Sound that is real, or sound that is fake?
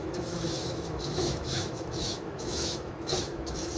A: fake